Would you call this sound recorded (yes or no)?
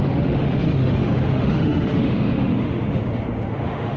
no